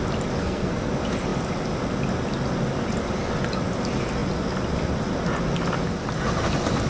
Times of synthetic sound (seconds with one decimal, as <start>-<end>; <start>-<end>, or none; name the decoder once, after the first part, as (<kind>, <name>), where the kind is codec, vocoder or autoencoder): 0.4-0.9 (codec, SNAC)